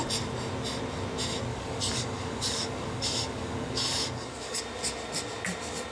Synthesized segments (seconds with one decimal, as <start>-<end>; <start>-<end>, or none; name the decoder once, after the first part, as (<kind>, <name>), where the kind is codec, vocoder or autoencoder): 1.5-4.6 (codec, DAC)